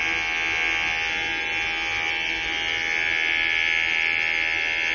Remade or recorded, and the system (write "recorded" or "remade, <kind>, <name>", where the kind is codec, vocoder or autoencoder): recorded